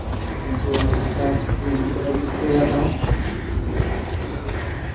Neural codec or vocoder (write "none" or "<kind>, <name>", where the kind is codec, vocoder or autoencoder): none